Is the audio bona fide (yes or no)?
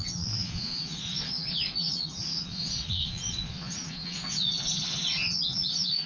no